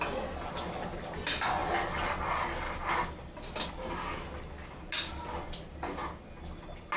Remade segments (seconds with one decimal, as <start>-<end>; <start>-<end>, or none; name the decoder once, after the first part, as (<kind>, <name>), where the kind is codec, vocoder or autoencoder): none